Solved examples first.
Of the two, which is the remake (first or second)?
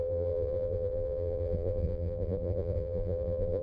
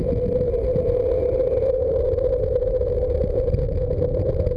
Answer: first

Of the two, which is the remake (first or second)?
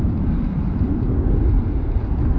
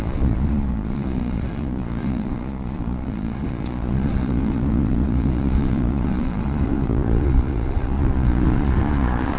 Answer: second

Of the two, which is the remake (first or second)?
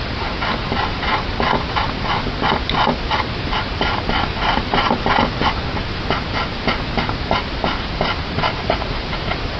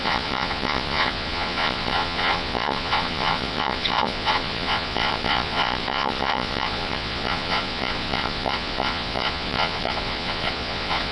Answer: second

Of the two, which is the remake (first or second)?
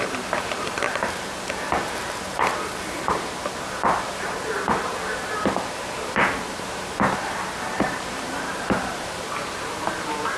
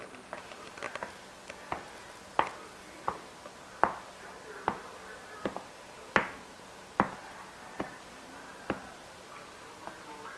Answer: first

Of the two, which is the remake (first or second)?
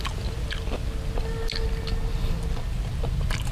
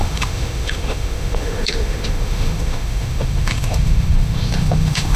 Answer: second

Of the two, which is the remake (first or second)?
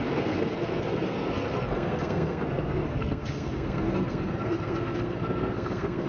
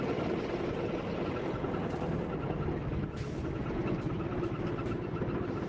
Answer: first